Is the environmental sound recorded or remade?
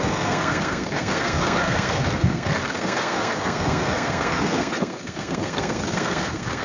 remade